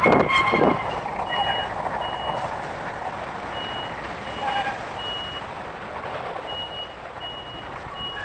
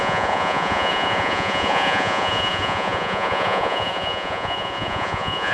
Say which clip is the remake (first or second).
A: second